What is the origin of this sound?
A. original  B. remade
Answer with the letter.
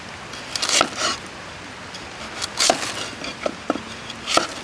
A